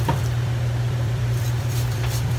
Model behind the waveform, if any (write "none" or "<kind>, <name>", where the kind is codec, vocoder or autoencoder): vocoder, BigVGAN v2